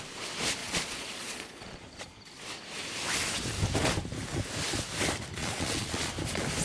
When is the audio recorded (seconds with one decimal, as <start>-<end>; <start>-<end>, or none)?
0.0-0.6; 2.0-5.4; 6.1-6.6